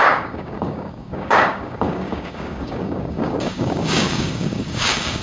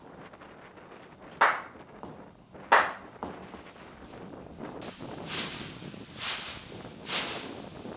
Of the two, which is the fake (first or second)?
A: first